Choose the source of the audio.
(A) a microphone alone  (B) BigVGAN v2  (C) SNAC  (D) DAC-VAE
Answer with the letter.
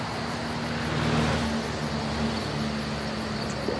A